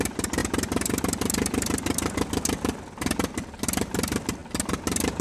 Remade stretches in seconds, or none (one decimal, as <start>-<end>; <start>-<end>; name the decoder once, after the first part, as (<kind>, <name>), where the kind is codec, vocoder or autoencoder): none